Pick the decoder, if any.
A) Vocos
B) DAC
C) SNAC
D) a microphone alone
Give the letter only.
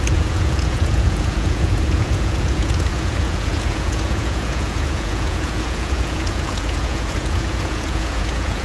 A